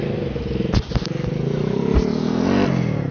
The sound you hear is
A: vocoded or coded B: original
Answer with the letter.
B